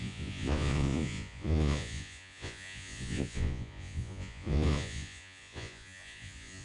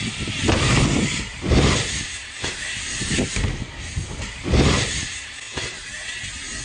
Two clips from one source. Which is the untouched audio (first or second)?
second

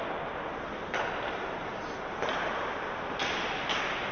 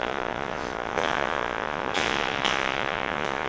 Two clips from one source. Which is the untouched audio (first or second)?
first